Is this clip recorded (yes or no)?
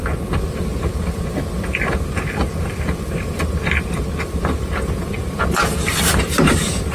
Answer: no